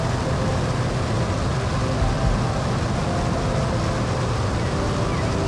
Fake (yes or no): no